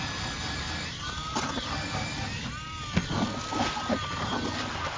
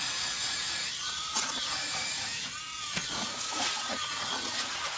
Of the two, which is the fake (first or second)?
second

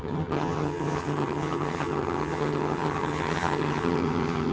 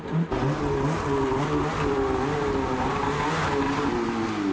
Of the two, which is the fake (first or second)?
first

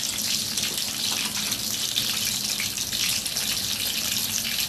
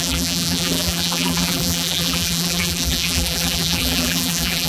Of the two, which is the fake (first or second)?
second